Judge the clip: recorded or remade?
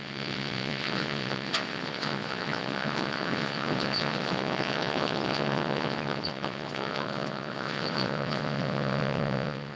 remade